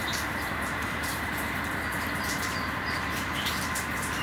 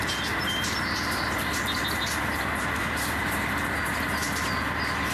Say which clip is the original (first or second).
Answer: second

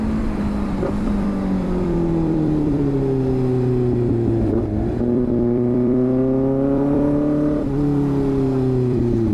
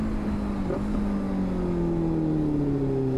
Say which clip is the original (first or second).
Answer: second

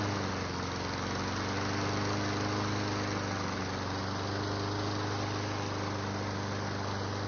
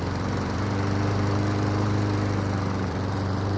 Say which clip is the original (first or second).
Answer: first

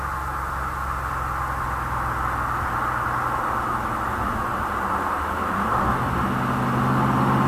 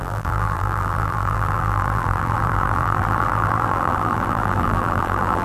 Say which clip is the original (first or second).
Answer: first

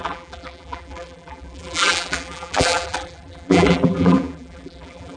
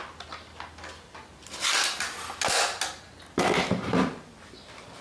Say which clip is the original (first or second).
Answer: second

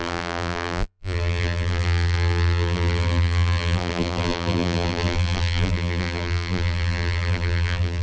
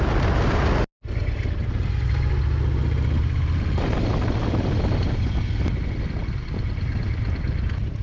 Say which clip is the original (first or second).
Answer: second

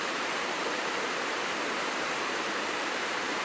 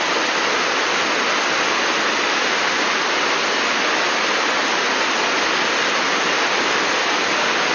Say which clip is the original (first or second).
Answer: second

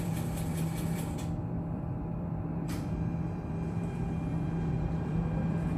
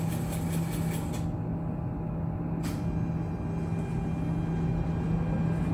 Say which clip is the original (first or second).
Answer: second